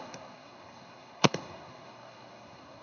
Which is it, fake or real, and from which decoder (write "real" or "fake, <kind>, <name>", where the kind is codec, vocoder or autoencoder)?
fake, codec, SNAC